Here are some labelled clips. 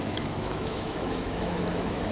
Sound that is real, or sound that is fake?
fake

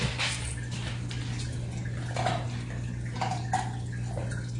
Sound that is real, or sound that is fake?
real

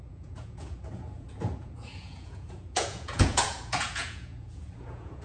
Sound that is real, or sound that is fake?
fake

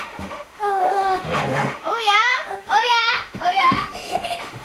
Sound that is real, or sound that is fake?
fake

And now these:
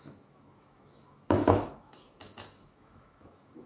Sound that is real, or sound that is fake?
fake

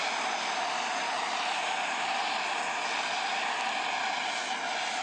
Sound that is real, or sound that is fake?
real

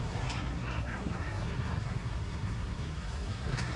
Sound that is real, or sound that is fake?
fake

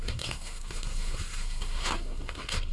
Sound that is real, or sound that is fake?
fake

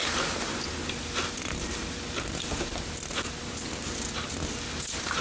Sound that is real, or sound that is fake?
real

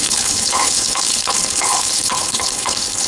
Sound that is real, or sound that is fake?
fake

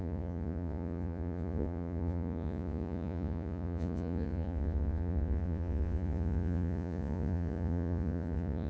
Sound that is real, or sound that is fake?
fake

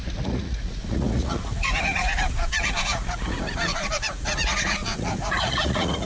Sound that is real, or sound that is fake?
fake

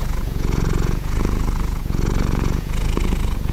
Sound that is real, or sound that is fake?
fake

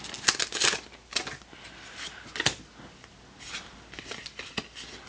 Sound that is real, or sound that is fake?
real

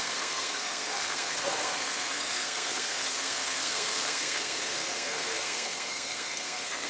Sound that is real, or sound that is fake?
fake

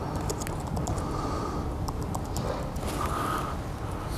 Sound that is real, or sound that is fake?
real